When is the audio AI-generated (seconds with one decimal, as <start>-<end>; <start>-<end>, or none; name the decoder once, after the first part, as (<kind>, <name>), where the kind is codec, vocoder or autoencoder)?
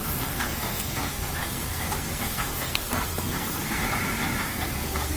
0.0-3.8 (codec, SNAC); 4.4-5.2